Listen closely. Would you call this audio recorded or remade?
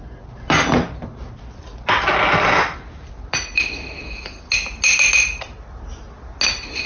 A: recorded